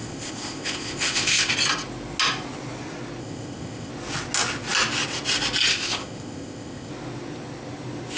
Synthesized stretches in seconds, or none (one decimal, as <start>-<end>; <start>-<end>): 0.0-1.5; 3.2-3.9; 5.7-6.9